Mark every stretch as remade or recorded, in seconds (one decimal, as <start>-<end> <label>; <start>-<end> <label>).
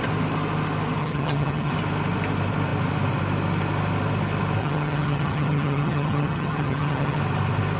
0.0-1.0 recorded; 1.0-1.7 remade; 1.7-4.6 recorded; 4.6-7.2 remade; 7.2-7.8 recorded